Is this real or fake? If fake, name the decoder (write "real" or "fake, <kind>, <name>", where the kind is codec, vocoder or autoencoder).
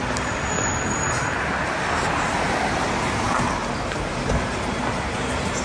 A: real